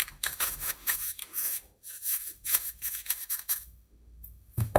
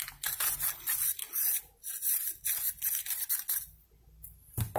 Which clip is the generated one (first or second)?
first